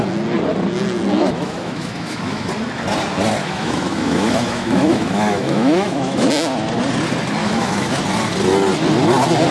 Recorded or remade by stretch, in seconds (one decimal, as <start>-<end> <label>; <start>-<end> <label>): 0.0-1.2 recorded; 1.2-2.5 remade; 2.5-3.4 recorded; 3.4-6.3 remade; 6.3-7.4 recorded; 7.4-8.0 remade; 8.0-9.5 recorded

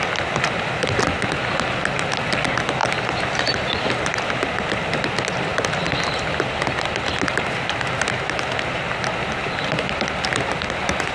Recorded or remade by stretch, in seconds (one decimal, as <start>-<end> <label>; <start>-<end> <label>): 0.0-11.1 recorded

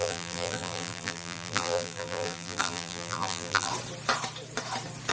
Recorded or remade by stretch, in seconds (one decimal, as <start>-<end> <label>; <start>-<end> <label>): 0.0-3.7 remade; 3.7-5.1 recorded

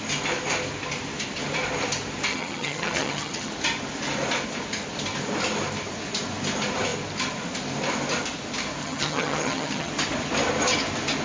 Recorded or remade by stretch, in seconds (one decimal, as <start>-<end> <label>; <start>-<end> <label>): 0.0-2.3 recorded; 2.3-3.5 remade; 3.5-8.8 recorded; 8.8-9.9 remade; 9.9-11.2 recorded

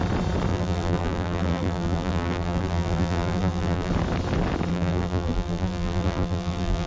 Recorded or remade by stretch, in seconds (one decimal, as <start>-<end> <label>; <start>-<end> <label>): 0.0-0.5 recorded; 0.5-3.9 remade; 3.9-4.7 recorded; 4.7-6.9 remade

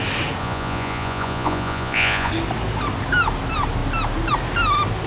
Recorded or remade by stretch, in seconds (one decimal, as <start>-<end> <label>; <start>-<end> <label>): 0.0-0.4 recorded; 0.4-2.3 remade; 2.3-5.1 recorded

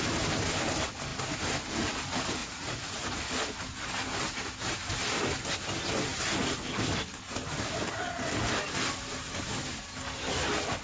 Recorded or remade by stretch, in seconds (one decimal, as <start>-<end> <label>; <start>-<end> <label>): 0.0-2.4 recorded; 2.4-3.2 remade; 3.2-10.8 recorded

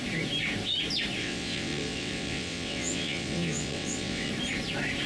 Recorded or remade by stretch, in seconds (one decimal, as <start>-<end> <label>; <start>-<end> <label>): 0.0-1.2 recorded; 1.2-4.3 remade; 4.3-5.1 recorded